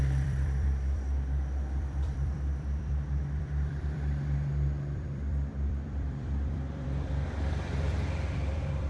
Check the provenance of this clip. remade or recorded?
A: remade